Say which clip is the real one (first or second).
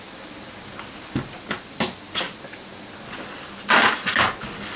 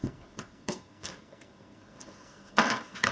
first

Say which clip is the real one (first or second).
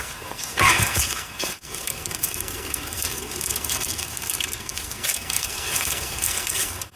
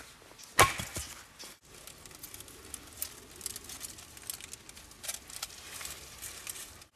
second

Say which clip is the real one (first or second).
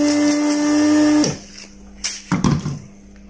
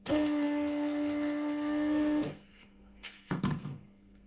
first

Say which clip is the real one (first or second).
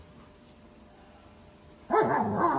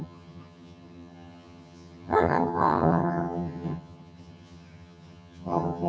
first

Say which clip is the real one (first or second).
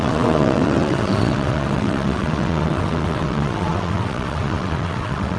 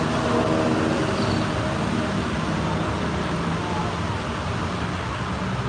second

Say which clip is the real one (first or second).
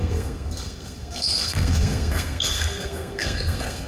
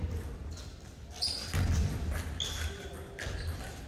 second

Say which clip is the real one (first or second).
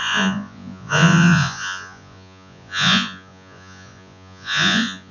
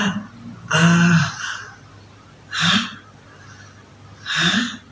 second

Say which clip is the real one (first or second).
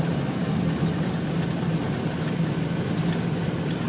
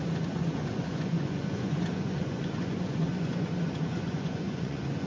first